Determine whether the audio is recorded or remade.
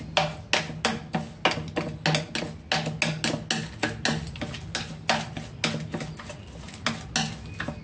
recorded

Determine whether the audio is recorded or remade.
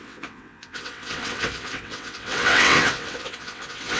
remade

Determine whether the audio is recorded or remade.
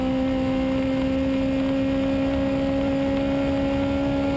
recorded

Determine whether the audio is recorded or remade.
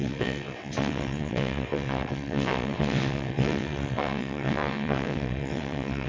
remade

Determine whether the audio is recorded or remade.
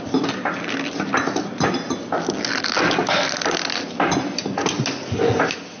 recorded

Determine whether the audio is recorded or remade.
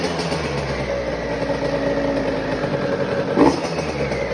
recorded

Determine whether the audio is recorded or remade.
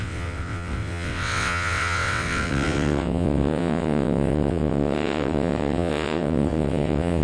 remade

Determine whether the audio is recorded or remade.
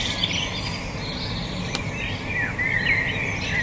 recorded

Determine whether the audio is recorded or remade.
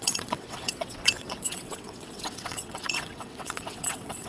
remade